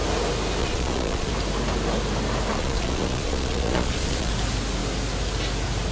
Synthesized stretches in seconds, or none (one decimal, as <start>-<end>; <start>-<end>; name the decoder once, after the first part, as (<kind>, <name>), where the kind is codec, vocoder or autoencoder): 0.6-1.3 (vocoder, Vocos); 2.5-4.3